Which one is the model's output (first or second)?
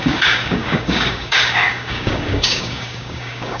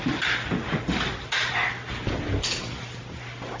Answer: first